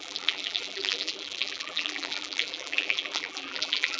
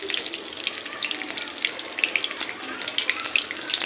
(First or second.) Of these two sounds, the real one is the second